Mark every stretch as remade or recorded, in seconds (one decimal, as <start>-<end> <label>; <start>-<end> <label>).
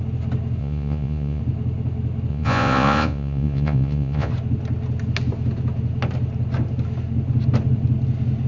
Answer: 0.0-0.6 recorded; 0.6-1.4 remade; 1.4-2.3 recorded; 2.3-4.3 remade; 4.3-8.5 recorded